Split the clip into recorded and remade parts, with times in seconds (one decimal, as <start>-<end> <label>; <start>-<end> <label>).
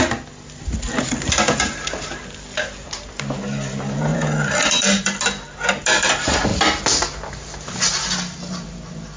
0.0-9.2 recorded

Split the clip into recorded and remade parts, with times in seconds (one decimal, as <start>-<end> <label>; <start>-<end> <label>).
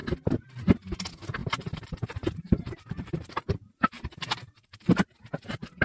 0.0-1.4 recorded; 1.4-4.9 remade; 4.9-5.8 recorded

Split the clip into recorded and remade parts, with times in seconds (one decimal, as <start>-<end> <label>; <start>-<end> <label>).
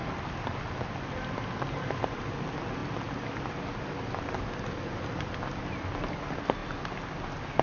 0.0-7.6 recorded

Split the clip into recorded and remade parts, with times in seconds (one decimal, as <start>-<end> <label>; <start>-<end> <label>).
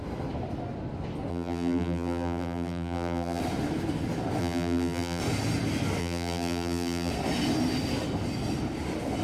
0.0-1.3 recorded; 1.3-3.4 remade; 3.4-4.4 recorded; 4.4-5.2 remade; 5.2-6.0 recorded; 6.0-7.1 remade; 7.1-9.2 recorded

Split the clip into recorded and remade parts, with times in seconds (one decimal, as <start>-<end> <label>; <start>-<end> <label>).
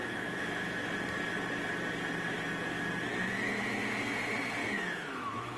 0.0-0.9 remade; 0.9-3.1 recorded; 3.1-3.8 remade; 3.8-4.6 recorded; 4.6-5.6 remade